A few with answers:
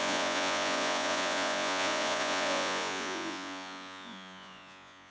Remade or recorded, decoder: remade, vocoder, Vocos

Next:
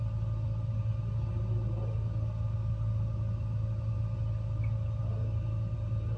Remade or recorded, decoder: recorded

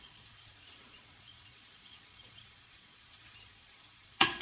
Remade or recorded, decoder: remade, vocoder, Vocos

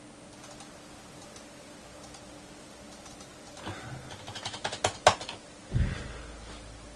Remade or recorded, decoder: recorded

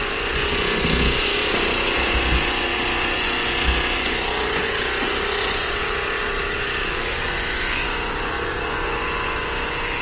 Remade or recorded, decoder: remade, vocoder, Vocos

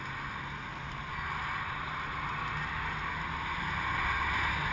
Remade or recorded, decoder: recorded